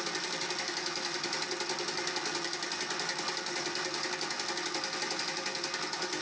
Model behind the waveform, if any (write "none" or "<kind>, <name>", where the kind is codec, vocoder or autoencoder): none